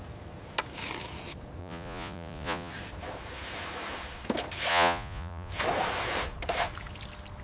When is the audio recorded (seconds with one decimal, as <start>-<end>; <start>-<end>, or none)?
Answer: 0.0-1.6; 2.7-4.7; 5.5-7.4